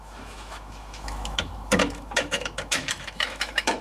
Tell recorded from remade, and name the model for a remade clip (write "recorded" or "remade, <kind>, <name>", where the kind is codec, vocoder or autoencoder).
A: remade, autoencoder, DAC-VAE